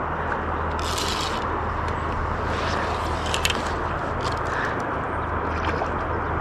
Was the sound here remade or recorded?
recorded